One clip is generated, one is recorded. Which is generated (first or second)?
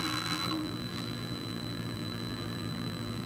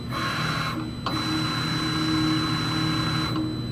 first